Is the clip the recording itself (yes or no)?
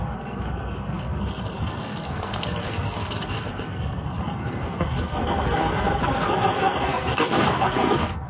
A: no